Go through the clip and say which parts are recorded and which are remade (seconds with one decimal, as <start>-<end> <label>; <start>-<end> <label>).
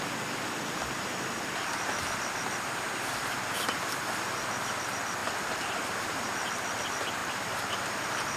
0.0-5.2 recorded; 5.2-5.8 remade; 5.8-7.2 recorded; 7.2-8.4 remade